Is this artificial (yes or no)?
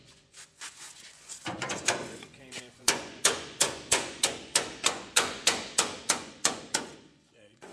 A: yes